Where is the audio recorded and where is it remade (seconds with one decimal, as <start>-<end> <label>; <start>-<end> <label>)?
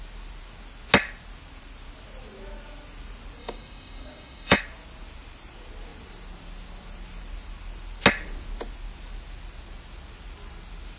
0.0-3.4 recorded; 3.4-4.6 remade; 4.6-11.0 recorded